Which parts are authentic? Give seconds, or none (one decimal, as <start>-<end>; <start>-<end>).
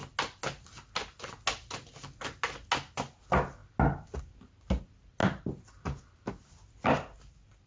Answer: 0.0-7.7